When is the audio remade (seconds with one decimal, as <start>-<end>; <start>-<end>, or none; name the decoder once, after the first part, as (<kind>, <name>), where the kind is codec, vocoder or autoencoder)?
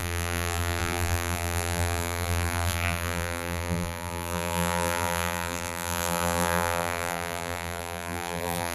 0.0-8.7 (vocoder, BigVGAN v2)